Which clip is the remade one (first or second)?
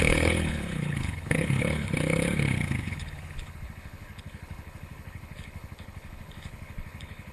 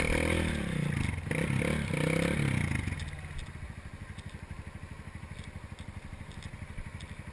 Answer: first